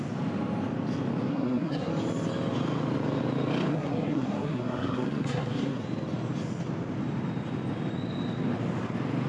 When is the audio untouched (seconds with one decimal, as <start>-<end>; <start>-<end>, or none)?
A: 0.0-1.3; 1.9-3.7; 5.8-9.3